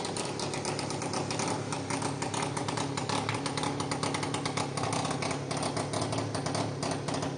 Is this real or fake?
real